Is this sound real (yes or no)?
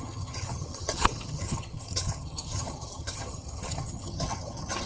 no